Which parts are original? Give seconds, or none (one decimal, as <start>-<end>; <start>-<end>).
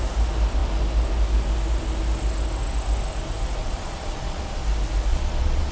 0.0-3.6; 4.6-5.1